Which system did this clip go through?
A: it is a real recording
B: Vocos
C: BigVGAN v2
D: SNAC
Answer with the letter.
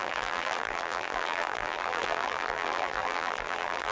C